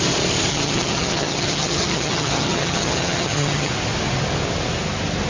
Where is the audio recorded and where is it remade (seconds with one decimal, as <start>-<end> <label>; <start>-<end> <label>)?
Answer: 0.0-0.5 recorded; 0.5-3.7 remade; 3.7-5.3 recorded

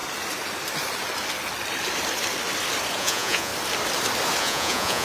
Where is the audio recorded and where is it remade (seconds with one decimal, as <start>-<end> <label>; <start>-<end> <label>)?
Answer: 0.0-3.0 recorded; 3.0-3.5 remade; 3.5-4.4 recorded; 4.4-5.0 remade

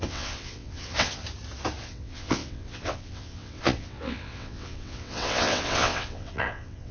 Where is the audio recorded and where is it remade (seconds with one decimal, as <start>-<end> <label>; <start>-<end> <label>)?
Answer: 0.0-1.2 remade; 1.2-1.8 recorded; 1.8-6.9 remade

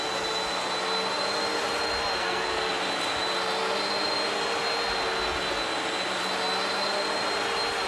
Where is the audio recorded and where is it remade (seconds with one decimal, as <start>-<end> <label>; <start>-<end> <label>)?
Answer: 0.0-2.2 recorded; 2.2-2.7 remade; 2.7-7.9 recorded

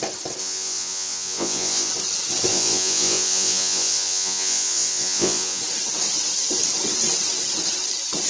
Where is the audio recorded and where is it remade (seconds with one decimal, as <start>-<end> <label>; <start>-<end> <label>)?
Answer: 0.0-0.4 recorded; 0.4-1.9 remade; 1.9-2.5 recorded; 2.5-5.6 remade; 5.6-8.3 recorded

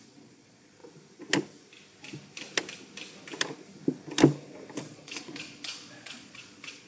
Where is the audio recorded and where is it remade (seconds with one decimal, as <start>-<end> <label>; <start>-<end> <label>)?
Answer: 0.0-0.8 remade; 0.8-4.8 recorded; 4.8-6.9 remade

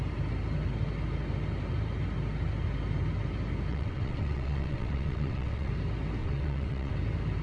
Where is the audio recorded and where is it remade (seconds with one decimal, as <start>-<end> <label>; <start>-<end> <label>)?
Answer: 0.0-3.7 recorded; 3.7-5.7 remade; 5.7-6.2 recorded; 6.2-6.9 remade; 6.9-7.4 recorded